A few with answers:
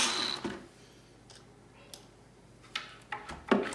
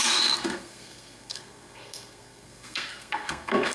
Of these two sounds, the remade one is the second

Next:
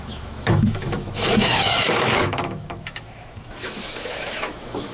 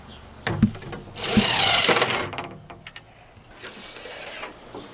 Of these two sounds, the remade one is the first